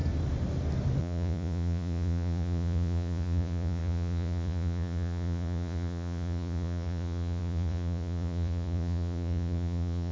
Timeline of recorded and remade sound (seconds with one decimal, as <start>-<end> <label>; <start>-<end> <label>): 0.0-1.0 recorded; 1.0-10.1 remade